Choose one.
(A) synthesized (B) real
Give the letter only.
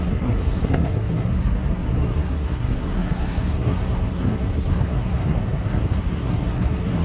A